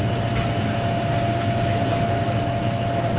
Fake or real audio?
real